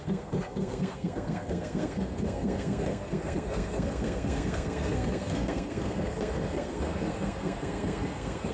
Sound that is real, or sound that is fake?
fake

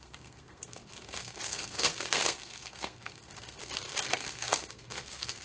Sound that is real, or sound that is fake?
fake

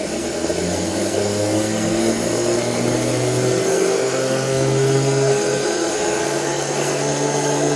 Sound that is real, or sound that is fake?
fake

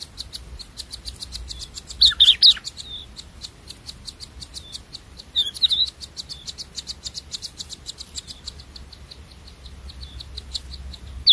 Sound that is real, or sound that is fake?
real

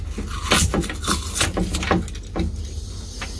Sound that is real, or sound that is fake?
real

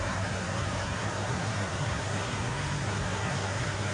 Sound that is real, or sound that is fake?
fake